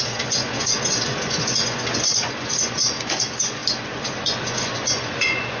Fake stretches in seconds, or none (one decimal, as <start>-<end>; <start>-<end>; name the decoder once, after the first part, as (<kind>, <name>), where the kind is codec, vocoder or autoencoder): 0.0-5.6 (vocoder, Vocos)